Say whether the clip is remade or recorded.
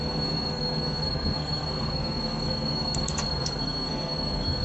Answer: remade